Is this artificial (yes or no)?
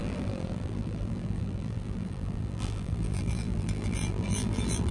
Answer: yes